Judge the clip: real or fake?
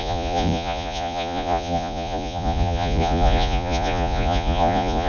fake